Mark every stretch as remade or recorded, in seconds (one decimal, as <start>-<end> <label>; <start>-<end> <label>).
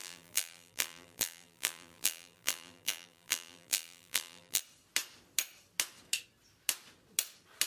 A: 0.0-4.6 remade; 4.6-7.7 recorded